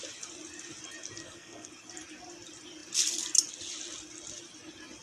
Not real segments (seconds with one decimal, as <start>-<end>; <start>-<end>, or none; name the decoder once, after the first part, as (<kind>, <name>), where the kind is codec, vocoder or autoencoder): 1.2-1.7 (codec, SNAC)